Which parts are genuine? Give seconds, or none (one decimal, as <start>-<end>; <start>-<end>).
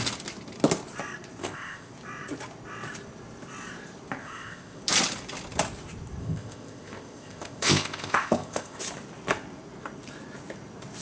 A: 0.0-1.4; 1.9-4.2; 4.8-6.2; 8.8-11.0